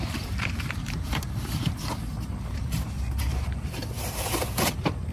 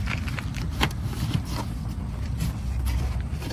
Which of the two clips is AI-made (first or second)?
first